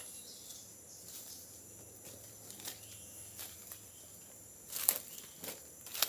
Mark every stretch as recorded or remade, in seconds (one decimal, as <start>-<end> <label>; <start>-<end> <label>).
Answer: 0.0-6.1 recorded